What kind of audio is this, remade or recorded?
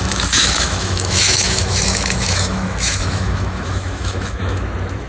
remade